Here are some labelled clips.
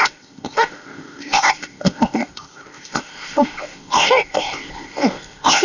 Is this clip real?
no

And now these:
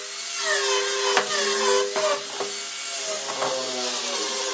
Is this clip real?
yes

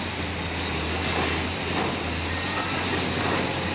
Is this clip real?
yes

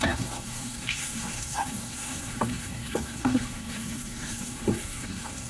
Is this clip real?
no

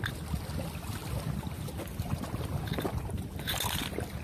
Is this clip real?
yes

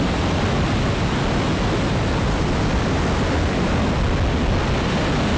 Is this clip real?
yes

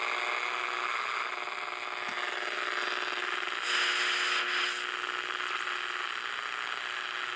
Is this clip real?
yes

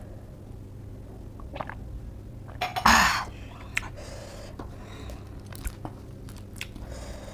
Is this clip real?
yes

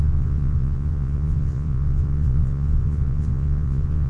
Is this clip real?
no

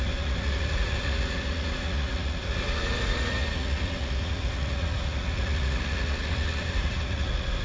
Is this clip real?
no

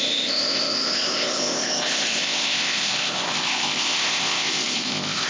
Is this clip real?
no